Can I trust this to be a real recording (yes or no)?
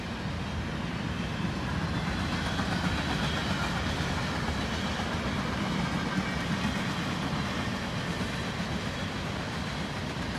yes